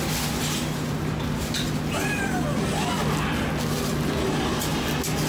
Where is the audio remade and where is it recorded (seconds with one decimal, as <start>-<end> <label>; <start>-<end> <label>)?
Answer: 0.0-5.3 recorded